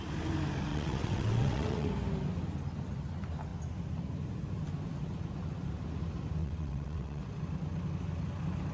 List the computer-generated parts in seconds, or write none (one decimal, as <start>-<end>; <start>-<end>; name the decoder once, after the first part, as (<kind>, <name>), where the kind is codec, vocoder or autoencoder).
0.7-1.9 (vocoder, WaveNeXt); 6.4-7.2